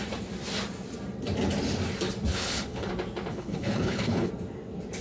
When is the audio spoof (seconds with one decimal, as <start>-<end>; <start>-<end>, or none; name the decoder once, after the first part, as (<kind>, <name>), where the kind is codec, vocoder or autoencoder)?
2.3-2.9 (codec, HILCodec); 3.3-4.3